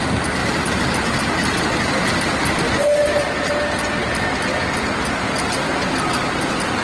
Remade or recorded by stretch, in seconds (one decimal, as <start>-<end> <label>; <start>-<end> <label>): 0.0-0.4 recorded; 0.4-2.8 remade; 2.8-6.8 recorded